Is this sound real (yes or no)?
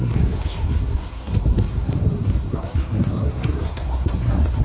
no